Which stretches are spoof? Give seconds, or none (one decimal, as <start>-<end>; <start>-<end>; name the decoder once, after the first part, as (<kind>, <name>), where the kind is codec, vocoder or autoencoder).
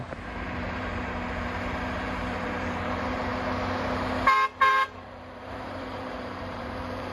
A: 0.0-3.3 (vocoder, BigVGAN v2); 4.7-7.1